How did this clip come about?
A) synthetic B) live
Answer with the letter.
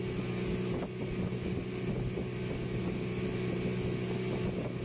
B